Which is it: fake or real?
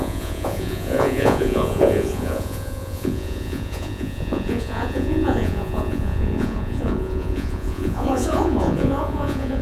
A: fake